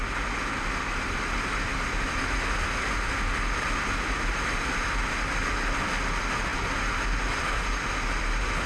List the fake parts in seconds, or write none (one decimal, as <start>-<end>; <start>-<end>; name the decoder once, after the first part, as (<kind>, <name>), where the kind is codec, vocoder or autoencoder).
none